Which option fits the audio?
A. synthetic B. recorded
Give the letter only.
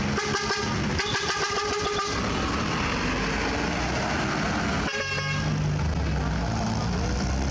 B